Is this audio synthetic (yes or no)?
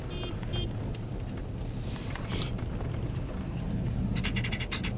no